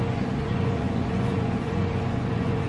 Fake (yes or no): yes